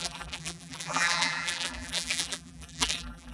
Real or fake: fake